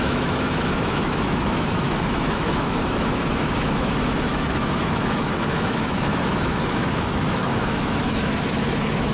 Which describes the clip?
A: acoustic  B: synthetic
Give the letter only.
B